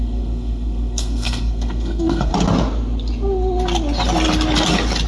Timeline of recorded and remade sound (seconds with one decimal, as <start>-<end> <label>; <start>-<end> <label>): 0.0-2.3 remade; 2.3-5.1 recorded